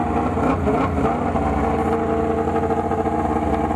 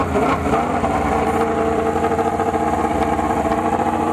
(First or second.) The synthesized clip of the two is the second